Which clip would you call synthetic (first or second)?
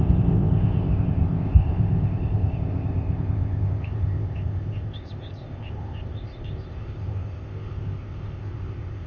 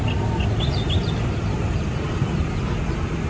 first